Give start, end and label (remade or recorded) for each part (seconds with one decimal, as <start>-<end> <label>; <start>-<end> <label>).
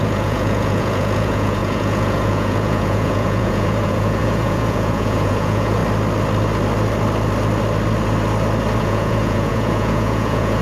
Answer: 0.0-5.8 remade; 5.8-8.8 recorded; 8.8-10.6 remade